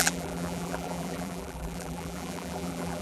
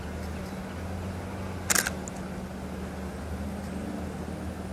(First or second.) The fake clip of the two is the first